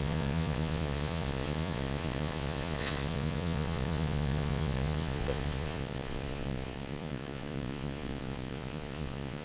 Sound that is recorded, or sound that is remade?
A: remade